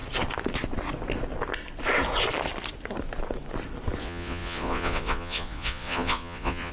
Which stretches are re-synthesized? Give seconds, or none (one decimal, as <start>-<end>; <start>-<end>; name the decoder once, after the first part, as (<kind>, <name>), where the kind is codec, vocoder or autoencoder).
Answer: 4.0-6.7 (vocoder, Vocos)